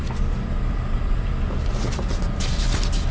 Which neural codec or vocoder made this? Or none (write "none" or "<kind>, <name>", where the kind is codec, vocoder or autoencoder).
none